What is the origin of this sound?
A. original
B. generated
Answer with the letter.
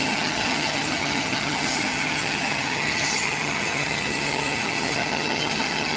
B